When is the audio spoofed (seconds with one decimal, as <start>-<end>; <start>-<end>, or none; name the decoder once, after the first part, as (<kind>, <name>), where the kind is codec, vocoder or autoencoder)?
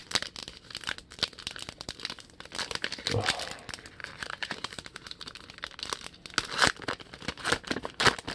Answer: 4.0-5.2 (vocoder, BigVGAN v2)